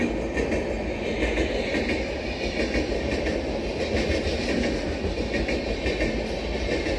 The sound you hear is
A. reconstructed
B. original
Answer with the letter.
B